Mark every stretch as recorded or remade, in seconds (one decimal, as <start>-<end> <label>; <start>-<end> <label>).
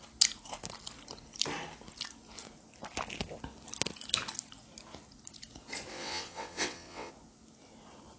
0.0-5.9 recorded; 5.9-7.1 remade; 7.1-8.2 recorded